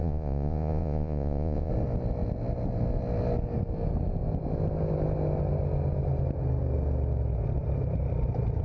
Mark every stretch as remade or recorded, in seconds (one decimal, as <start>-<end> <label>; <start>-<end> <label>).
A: 0.0-1.7 remade; 1.7-8.6 recorded